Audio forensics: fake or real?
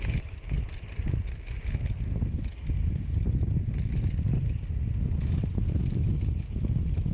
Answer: real